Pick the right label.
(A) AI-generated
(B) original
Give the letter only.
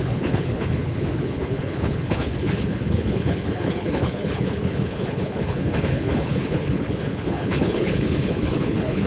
A